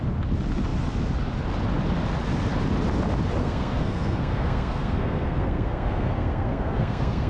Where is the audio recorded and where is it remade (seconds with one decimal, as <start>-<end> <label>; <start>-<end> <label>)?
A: 0.0-3.4 recorded; 3.4-7.3 remade